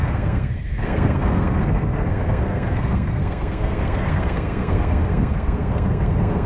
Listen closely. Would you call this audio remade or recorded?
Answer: remade